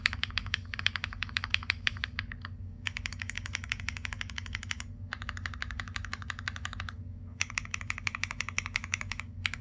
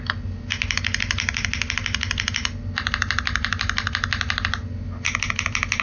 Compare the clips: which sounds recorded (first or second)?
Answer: second